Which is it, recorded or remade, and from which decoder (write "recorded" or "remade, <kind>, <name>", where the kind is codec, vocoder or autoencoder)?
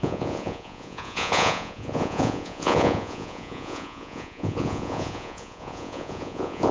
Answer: remade, vocoder, Vocos